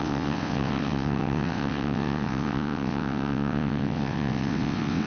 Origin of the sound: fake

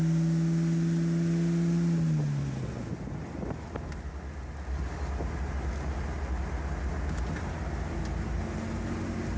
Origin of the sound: real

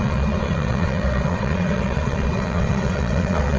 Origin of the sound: fake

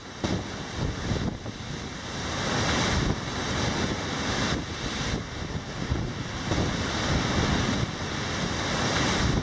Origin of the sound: real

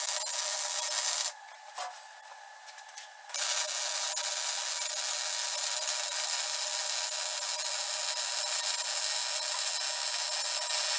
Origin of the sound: real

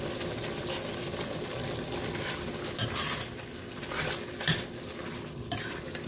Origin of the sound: real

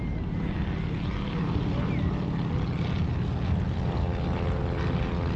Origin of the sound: real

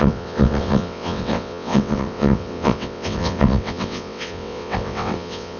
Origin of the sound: fake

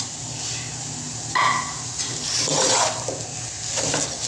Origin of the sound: real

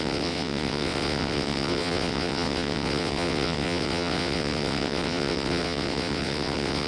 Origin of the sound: fake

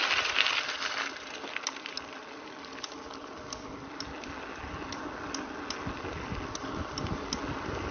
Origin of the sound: real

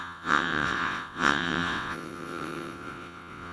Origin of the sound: fake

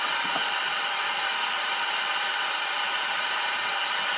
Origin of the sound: real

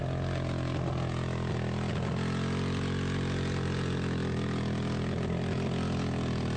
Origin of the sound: real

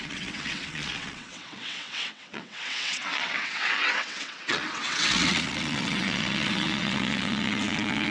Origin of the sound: fake